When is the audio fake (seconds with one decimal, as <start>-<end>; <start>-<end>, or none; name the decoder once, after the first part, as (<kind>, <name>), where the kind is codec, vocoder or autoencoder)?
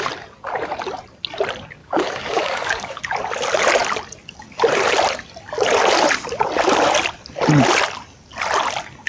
1.8-3.0 (codec, DAC)